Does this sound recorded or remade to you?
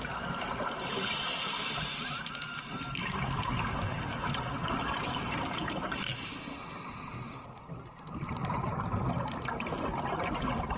recorded